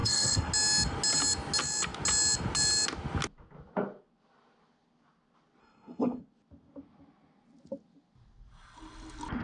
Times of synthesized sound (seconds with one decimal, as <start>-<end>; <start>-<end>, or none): 0.0-0.5; 5.6-6.2